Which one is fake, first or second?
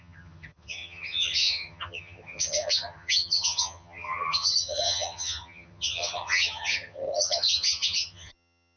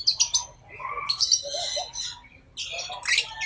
first